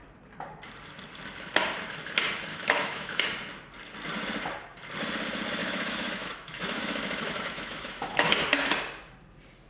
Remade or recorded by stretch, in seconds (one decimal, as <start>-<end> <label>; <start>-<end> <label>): 0.0-2.5 recorded; 2.5-3.2 remade; 3.2-5.6 recorded; 5.6-8.3 remade; 8.3-9.7 recorded